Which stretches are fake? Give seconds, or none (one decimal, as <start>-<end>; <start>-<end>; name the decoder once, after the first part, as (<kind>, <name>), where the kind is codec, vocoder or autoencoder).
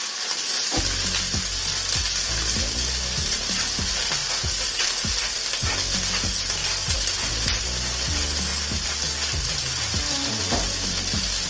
0.0-0.8 (vocoder, BigVGAN v2); 6.6-7.3